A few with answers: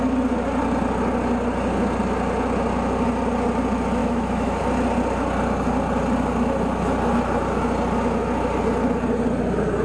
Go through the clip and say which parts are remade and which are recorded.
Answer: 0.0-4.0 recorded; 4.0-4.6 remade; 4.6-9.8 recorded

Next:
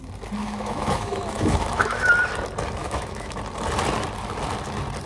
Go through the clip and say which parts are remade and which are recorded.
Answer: 0.0-0.4 recorded; 0.4-2.1 remade; 2.1-2.8 recorded; 2.8-3.4 remade; 3.4-5.1 recorded

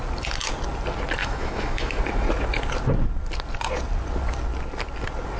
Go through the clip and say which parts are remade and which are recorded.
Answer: 0.0-1.2 recorded; 1.2-2.0 remade; 2.0-5.4 recorded

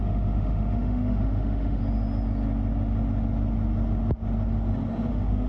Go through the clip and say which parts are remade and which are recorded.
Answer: 0.0-1.8 remade; 1.8-5.1 recorded; 5.1-5.5 remade

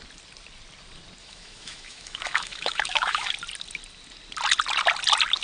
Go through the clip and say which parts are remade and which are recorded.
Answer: 0.0-1.2 recorded; 1.2-3.3 remade; 3.3-5.4 recorded

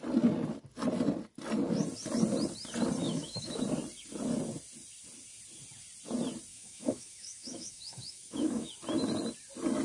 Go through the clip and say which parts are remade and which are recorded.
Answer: 0.0-3.0 recorded; 3.0-3.6 remade; 3.6-6.5 recorded; 6.5-8.7 remade; 8.7-9.8 recorded

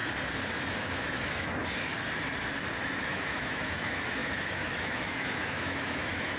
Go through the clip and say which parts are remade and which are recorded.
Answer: 0.0-0.8 recorded; 0.8-1.6 remade; 1.6-2.9 recorded; 2.9-6.4 remade